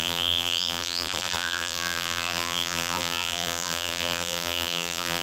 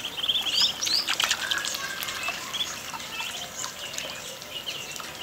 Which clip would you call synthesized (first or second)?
first